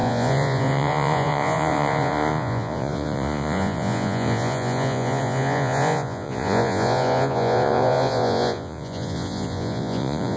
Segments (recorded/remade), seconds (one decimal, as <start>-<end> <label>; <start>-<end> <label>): 0.0-10.4 remade